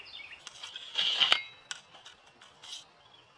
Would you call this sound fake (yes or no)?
no